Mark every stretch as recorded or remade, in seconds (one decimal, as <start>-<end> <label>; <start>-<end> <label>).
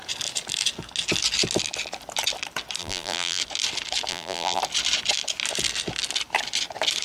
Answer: 0.0-2.8 recorded; 2.8-3.4 remade; 3.4-4.1 recorded; 4.1-4.6 remade; 4.6-7.0 recorded